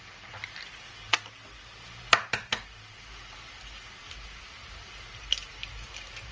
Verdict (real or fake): real